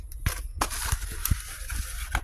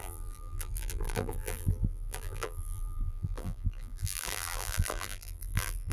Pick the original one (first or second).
first